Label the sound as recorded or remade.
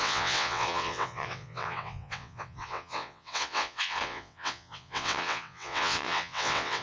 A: remade